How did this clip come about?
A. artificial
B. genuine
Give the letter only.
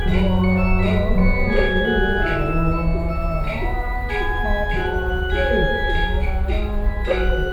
B